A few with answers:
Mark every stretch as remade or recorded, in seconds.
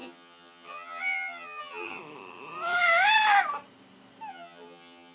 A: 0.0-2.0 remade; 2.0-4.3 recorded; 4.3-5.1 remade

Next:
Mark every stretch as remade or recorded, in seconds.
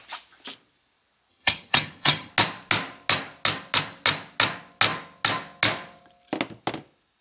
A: 0.0-1.3 recorded; 1.3-2.3 remade; 2.3-7.2 recorded